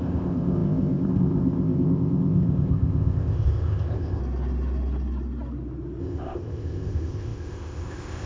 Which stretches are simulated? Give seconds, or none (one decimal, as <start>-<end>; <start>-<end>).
0.0-4.2; 6.0-8.3

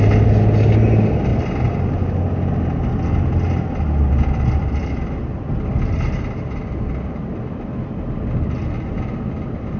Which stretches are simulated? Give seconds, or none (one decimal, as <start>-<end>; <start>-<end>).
none

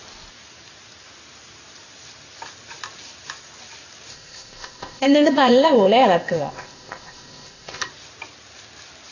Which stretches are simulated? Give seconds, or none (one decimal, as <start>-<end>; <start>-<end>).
4.1-7.9

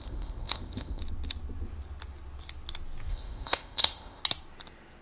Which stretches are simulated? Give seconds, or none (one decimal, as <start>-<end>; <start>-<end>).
0.0-1.0; 3.1-4.2

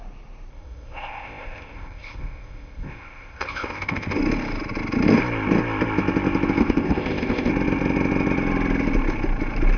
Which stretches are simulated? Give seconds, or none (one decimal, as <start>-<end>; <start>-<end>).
0.5-4.2; 6.6-7.5

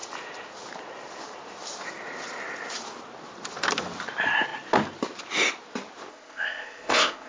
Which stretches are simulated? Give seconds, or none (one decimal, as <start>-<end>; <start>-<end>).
6.1-7.3

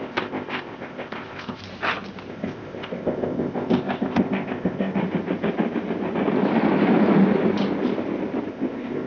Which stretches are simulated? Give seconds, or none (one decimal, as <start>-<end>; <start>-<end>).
0.0-1.6; 2.3-5.0; 8.5-9.1

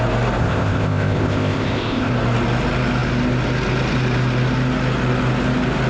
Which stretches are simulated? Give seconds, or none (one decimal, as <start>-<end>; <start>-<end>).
0.4-2.1